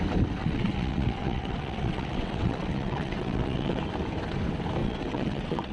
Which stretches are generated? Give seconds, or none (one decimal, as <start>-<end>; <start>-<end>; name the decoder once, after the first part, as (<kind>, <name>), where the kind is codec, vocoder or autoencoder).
0.4-3.8 (vocoder, WaveNeXt); 4.8-5.7